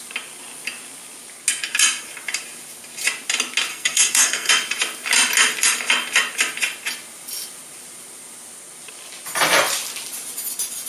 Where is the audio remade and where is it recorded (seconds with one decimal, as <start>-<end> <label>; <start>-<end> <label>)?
0.0-3.7 recorded; 3.7-4.5 remade; 4.5-10.9 recorded